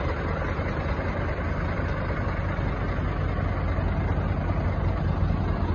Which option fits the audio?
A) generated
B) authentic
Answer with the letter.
B